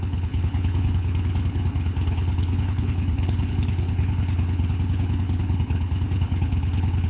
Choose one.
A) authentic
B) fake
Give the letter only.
B